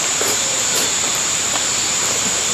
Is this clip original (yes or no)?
no